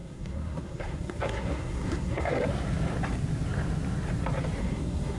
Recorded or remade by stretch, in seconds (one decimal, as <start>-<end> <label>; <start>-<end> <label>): 0.0-2.5 remade; 2.5-4.6 recorded; 4.6-5.2 remade